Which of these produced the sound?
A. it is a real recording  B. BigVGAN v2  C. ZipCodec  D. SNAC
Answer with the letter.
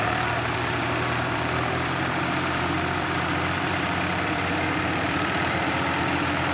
B